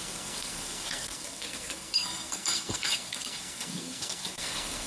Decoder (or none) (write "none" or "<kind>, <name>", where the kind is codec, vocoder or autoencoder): codec, SNAC